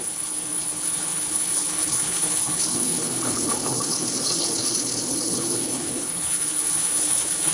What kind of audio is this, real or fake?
fake